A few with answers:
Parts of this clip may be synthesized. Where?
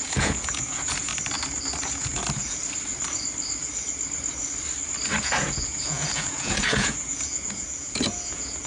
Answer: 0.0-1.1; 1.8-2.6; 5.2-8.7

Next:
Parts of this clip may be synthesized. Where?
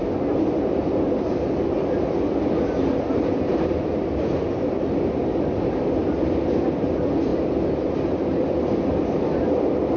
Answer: none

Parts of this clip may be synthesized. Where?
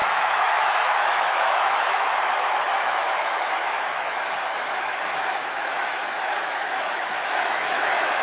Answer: 0.0-8.2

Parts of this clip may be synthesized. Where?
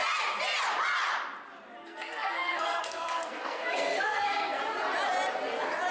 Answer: 1.8-4.6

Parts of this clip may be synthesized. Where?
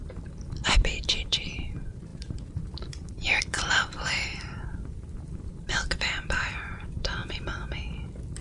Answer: 0.0-7.2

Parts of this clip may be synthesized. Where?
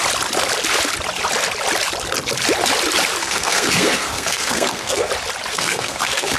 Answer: 3.2-5.1; 5.5-6.4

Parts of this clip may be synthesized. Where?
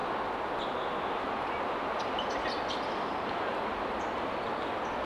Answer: none